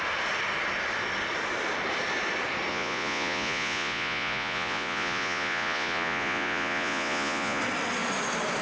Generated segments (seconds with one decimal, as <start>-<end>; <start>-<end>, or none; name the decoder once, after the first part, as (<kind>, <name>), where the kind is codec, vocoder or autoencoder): 2.7-7.6 (vocoder, Vocos)